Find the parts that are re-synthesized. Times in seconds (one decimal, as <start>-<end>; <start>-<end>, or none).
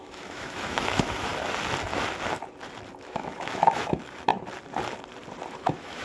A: 0.0-1.3; 3.0-4.3; 5.5-6.0